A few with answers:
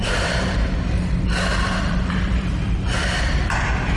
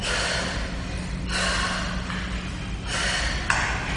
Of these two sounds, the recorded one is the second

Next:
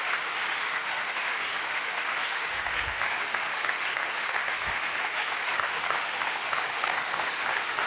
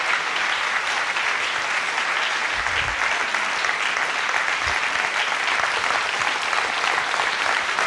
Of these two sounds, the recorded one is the second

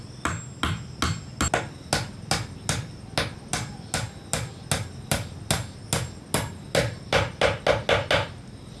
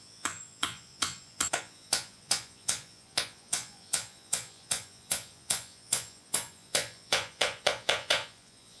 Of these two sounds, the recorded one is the first